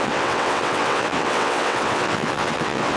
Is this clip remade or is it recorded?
remade